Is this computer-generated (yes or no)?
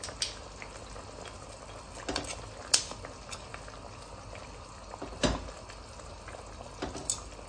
no